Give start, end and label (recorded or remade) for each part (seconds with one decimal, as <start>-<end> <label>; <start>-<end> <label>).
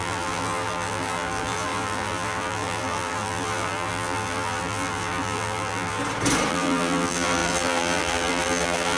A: 0.0-6.0 remade; 6.0-6.5 recorded; 6.5-9.0 remade